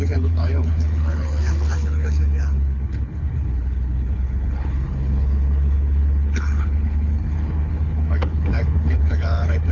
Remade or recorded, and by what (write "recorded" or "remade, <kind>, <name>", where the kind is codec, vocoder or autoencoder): remade, codec, HILCodec